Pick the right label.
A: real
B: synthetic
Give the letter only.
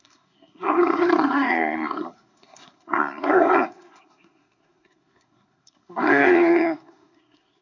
B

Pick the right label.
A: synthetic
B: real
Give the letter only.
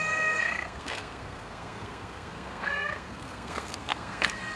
A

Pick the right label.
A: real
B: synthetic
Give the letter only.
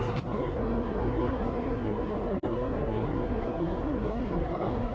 B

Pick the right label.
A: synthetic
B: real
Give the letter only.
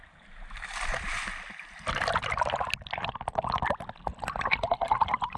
B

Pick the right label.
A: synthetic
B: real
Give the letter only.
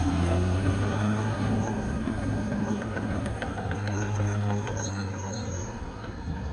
A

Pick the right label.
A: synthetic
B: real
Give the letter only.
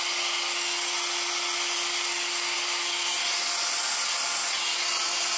B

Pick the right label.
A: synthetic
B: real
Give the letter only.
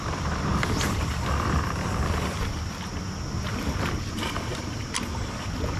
B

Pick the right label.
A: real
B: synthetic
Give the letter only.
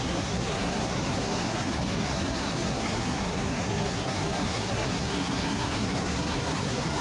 B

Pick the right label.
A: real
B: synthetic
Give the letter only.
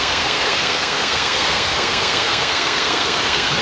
B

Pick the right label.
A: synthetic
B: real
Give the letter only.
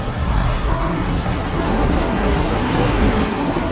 A